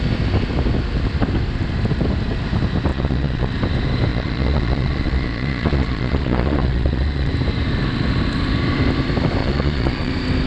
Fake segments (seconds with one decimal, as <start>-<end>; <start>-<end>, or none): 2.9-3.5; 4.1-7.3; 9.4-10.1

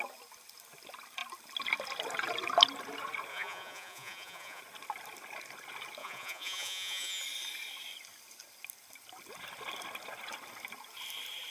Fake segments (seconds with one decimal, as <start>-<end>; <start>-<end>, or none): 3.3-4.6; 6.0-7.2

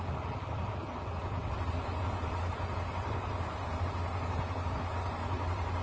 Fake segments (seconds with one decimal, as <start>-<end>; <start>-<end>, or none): 0.0-5.8

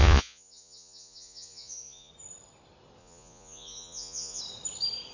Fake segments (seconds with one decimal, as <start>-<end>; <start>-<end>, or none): 0.0-2.1; 3.0-4.4

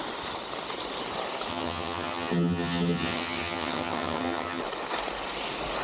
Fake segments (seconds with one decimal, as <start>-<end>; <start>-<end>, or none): 1.5-4.6

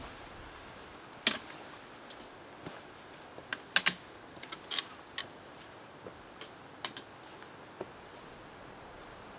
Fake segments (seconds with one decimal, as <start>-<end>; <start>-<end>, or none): none

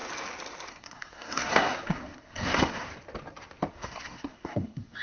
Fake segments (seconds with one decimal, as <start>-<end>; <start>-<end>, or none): 0.7-2.9; 3.7-5.0

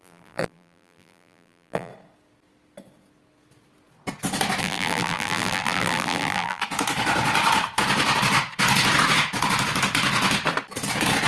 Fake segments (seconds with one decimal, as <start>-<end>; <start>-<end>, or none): 0.0-1.9; 4.6-6.6